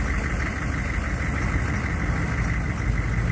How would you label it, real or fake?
real